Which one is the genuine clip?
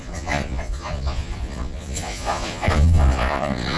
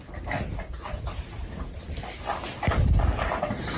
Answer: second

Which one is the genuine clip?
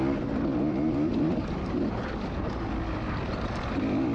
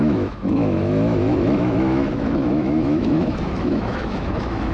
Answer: first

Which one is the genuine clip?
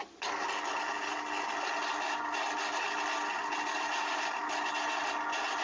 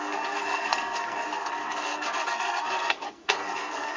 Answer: first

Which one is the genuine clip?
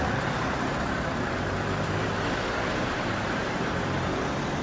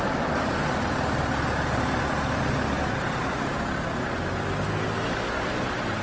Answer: second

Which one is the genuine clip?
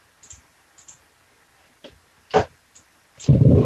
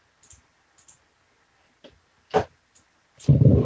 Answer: second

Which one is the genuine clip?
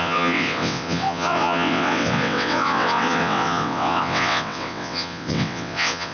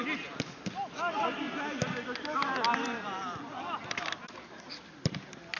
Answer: second